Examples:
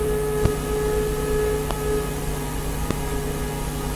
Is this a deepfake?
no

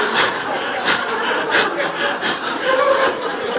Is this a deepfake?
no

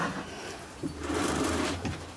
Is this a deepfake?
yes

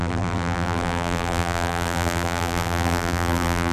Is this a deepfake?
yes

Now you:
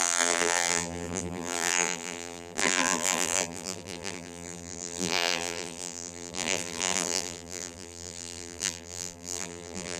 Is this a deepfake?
yes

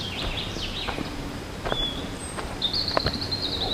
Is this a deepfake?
yes